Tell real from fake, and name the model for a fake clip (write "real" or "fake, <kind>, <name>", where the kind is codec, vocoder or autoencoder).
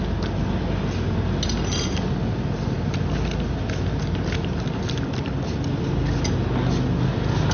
real